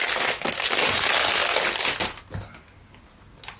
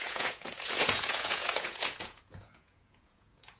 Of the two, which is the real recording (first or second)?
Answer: first